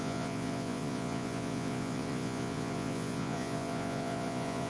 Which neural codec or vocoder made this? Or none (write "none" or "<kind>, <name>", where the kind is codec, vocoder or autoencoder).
vocoder, Vocos